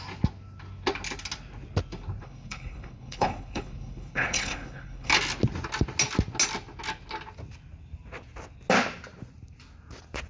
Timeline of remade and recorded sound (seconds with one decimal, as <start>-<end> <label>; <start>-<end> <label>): 0.0-2.2 recorded; 2.2-5.1 remade; 5.1-10.3 recorded